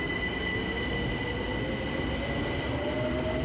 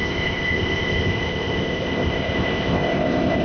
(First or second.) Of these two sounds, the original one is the first